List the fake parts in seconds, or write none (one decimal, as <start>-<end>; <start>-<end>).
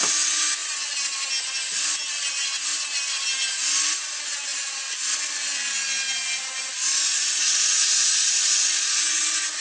none